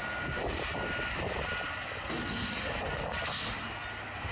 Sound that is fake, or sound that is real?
real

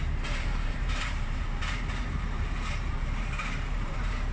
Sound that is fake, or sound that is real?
fake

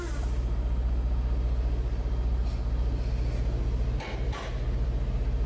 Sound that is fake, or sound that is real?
real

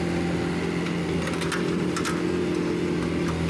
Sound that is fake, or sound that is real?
real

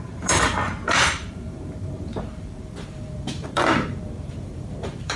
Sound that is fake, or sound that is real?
fake